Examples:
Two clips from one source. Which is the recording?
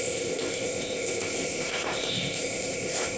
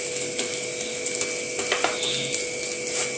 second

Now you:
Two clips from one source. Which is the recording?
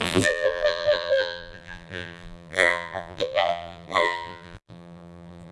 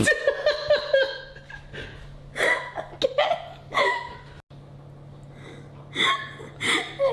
second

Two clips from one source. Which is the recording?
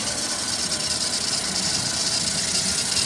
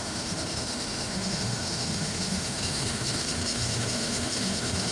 first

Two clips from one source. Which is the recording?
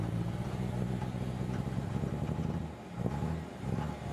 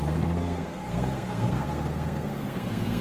first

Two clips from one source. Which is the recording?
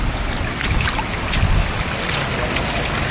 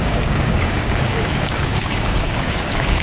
first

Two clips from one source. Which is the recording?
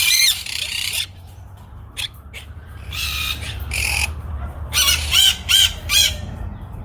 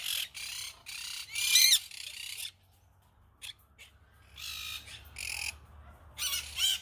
second